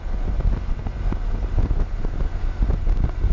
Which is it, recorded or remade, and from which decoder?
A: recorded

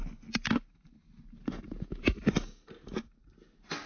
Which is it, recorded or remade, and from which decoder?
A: recorded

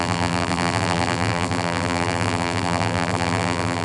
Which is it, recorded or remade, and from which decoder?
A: remade, vocoder, BigVGAN v2